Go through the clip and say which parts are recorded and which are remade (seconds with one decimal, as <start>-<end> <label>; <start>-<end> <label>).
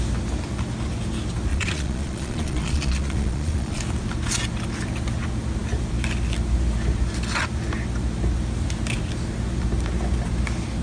0.0-1.5 recorded; 1.5-3.8 remade; 3.8-10.8 recorded